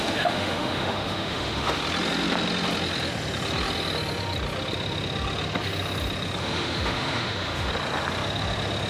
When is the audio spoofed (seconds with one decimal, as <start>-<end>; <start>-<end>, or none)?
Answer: 0.0-1.8; 6.4-7.7